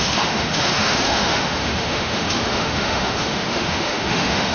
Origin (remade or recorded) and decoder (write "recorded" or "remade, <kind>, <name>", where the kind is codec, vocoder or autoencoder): remade, autoencoder, DAC-VAE